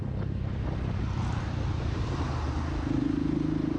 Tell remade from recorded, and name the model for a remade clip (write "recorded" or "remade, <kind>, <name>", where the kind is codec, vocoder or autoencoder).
recorded